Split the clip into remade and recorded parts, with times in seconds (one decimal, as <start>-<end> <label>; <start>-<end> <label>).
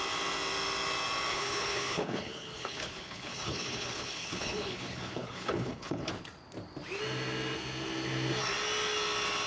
0.0-1.3 recorded; 1.3-6.1 remade; 6.1-9.5 recorded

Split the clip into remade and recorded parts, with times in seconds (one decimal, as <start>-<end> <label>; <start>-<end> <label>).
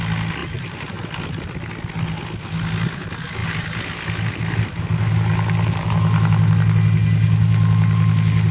0.0-0.4 recorded; 0.4-1.0 remade; 1.0-8.5 recorded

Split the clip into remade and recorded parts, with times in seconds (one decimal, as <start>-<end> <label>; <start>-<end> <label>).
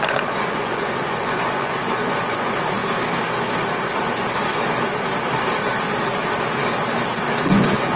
0.0-2.8 remade; 2.8-7.4 recorded; 7.4-8.0 remade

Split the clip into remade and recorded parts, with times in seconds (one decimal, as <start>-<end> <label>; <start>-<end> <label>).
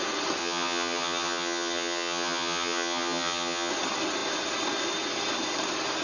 0.0-0.4 recorded; 0.4-3.7 remade; 3.7-6.0 recorded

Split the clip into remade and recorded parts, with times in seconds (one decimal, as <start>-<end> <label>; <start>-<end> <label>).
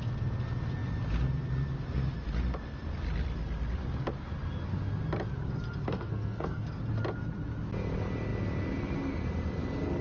0.0-5.8 recorded; 5.8-6.8 remade; 6.8-10.0 recorded